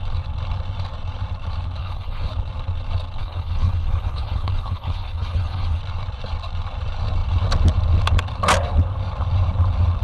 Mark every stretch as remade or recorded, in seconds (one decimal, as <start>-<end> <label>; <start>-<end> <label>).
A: 0.0-1.8 recorded; 1.8-2.3 remade; 2.3-3.2 recorded; 3.2-5.8 remade; 5.8-10.0 recorded